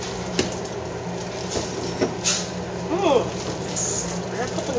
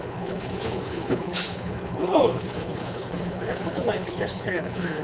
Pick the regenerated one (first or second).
second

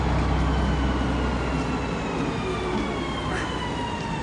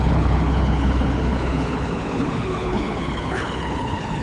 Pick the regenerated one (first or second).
second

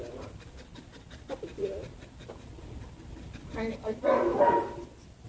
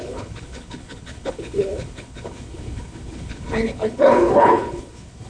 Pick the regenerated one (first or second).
second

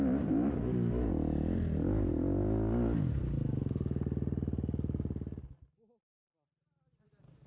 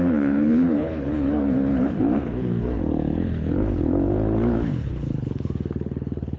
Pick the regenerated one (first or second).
second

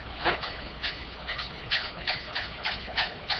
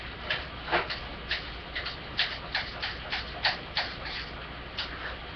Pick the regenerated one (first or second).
first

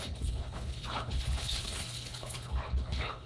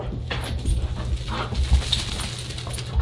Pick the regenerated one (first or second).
first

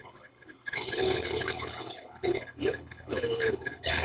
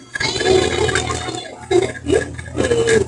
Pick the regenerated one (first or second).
first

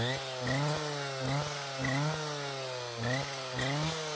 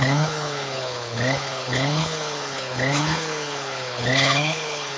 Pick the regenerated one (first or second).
second